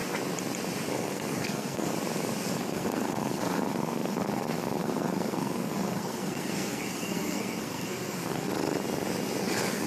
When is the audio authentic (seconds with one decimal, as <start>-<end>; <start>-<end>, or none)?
0.0-0.9; 1.9-2.5; 8.5-9.4